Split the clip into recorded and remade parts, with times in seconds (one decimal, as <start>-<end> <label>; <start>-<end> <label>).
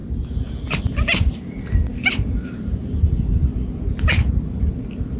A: 0.0-0.8 recorded; 0.8-3.4 remade; 3.4-5.2 recorded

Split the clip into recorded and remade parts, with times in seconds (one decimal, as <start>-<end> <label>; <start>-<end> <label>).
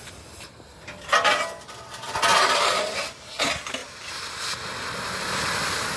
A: 0.0-2.3 recorded; 2.3-3.4 remade; 3.4-3.8 recorded; 3.8-4.4 remade; 4.4-6.0 recorded